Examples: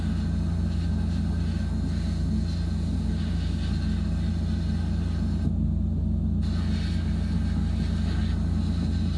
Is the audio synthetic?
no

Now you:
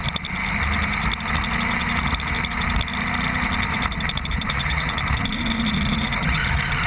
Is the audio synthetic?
no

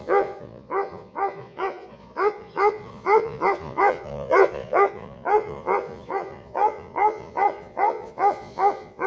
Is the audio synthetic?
yes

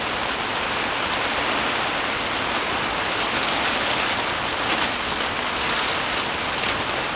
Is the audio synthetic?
no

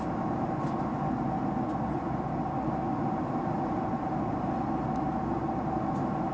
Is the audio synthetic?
no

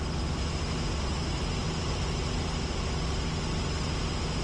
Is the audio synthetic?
no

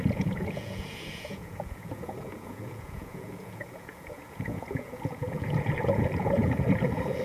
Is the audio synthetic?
yes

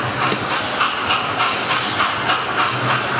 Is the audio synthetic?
no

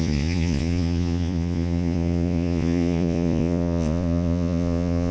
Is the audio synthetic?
yes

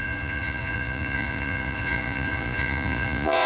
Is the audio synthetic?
yes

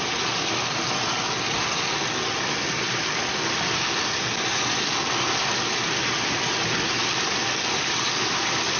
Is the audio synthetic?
no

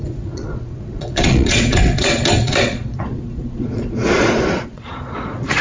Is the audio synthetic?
yes